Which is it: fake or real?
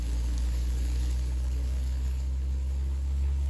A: fake